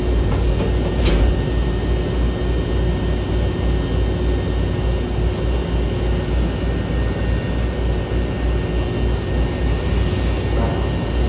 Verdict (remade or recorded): recorded